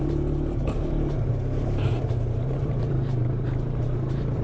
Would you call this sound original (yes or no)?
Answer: no